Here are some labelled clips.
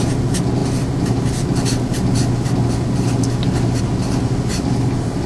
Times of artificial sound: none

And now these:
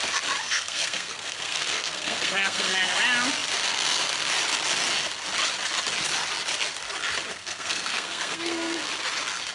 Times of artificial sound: 0.4-2.9 (codec, SNAC); 7.3-8.9

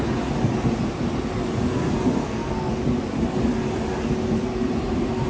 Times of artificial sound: 2.2-2.7 (codec, SNAC)